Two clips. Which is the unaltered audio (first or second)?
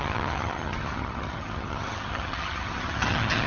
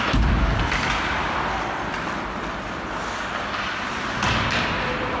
second